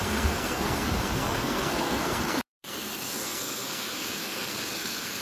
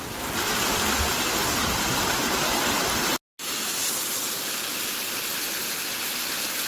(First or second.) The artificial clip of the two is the first